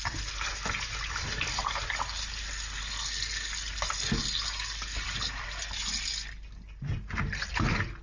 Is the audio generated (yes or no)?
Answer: no